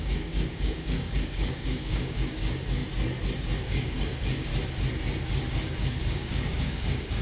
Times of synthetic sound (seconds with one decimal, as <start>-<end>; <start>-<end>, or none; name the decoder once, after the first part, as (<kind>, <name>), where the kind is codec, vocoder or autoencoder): 0.0-2.8 (codec, DAC); 3.6-4.5; 5.5-7.2